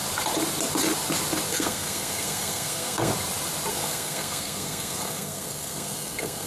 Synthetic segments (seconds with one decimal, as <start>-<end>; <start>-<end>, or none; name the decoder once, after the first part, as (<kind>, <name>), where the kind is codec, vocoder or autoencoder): 1.5-3.1 (codec, SNAC); 3.7-6.5